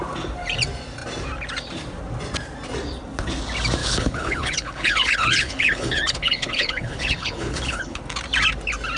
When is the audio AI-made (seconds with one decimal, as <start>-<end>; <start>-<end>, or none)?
3.8-8.0